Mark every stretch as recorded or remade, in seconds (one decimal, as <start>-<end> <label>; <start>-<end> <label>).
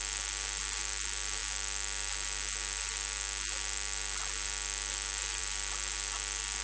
0.0-6.6 recorded